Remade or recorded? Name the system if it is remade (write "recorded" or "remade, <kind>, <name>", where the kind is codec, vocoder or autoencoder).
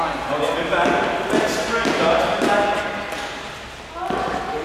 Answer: recorded